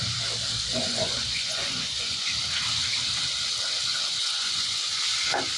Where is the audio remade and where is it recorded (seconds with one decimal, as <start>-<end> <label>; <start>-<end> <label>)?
0.0-0.8 recorded; 0.8-2.3 remade; 2.3-4.2 recorded; 4.2-5.0 remade; 5.0-5.6 recorded

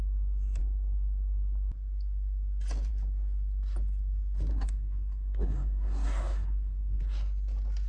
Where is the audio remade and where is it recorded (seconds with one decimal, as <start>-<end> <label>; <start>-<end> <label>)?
0.0-4.5 recorded; 4.5-7.0 remade; 7.0-7.9 recorded